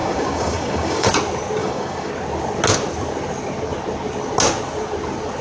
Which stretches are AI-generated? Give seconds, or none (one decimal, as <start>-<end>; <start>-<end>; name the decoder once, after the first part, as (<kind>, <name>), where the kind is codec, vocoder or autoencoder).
0.0-1.1 (codec, DAC); 1.6-2.1